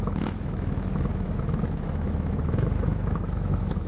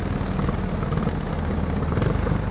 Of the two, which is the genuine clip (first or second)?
second